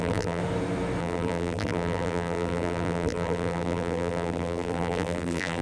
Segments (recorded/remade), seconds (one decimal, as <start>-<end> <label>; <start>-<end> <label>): 0.0-0.4 remade; 0.4-1.0 recorded; 1.0-5.6 remade